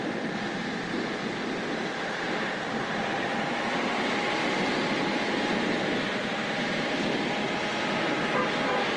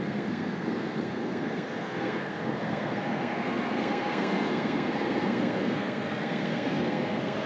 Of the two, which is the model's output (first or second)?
second